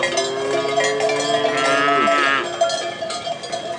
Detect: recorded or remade recorded